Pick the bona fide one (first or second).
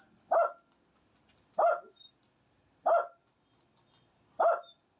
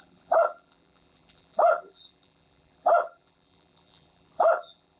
first